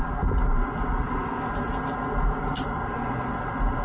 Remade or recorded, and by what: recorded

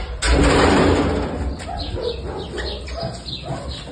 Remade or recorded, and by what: recorded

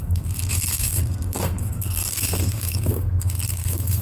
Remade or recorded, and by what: remade, codec, SNAC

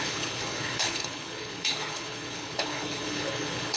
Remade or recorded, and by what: remade, codec, HILCodec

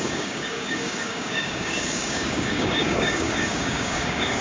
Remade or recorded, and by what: remade, codec, DAC